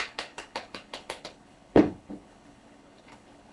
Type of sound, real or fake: fake